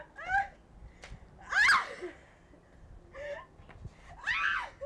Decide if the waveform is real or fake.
real